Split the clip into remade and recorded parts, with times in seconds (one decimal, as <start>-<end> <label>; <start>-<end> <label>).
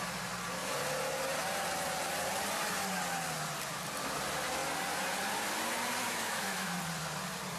0.0-6.0 recorded; 6.0-6.8 remade; 6.8-7.6 recorded